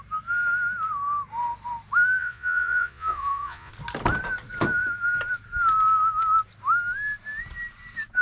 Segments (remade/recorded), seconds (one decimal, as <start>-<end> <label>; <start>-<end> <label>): 0.0-2.2 recorded; 2.2-3.7 remade; 3.7-8.2 recorded

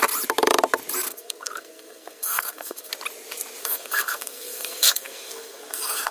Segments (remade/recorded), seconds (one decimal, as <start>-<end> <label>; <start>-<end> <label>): 0.0-1.1 recorded; 1.1-2.9 remade; 2.9-3.6 recorded; 3.6-6.1 remade

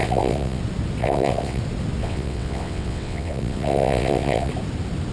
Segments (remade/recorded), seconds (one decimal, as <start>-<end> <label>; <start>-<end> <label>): 0.0-0.6 remade; 0.6-1.0 recorded; 1.0-1.6 remade; 1.6-2.0 recorded; 2.0-4.5 remade; 4.5-5.1 recorded